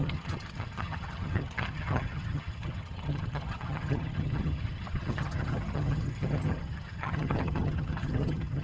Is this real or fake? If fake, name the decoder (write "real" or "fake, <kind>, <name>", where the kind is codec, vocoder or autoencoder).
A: fake, vocoder, HiFi-GAN